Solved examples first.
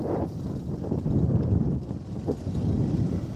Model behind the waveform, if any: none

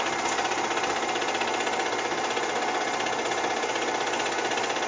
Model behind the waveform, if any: none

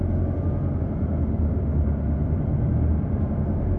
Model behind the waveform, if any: none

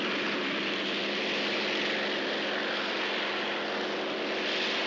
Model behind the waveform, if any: none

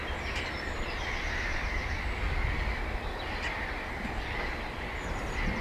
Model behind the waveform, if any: vocoder, BigVGAN v2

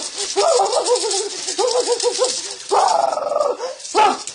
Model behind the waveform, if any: none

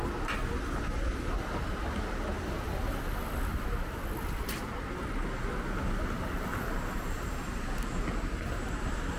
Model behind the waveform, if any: none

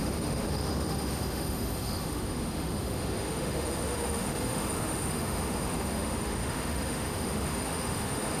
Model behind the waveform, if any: autoencoder, DAC-VAE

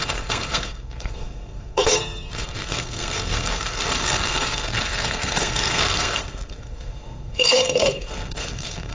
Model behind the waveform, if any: codec, SNAC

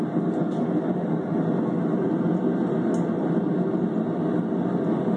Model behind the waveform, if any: none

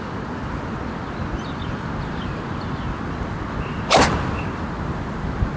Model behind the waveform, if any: none